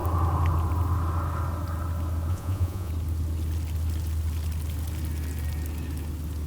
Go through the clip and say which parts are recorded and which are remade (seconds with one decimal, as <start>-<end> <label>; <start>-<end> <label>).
0.0-2.3 recorded; 2.3-2.9 remade; 2.9-6.5 recorded